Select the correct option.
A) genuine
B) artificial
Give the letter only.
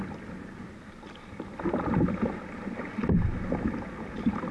A